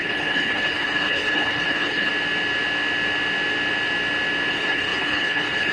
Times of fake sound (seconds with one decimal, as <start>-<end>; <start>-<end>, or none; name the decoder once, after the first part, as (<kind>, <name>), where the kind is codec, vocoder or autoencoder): 0.0-2.1 (codec, HILCodec); 4.5-5.7